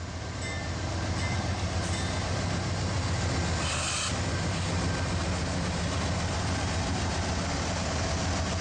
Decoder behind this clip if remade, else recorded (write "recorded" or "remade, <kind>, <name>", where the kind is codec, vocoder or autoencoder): recorded